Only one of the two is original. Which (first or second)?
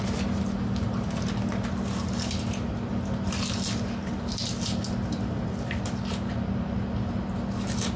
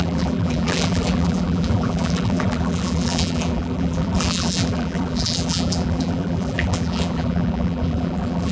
first